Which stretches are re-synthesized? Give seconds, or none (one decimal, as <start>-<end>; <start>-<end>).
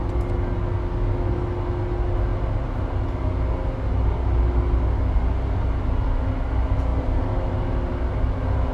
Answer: none